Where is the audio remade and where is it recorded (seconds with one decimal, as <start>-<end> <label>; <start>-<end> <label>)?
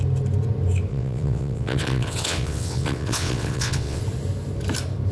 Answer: 0.0-0.9 recorded; 0.9-4.0 remade; 4.0-5.1 recorded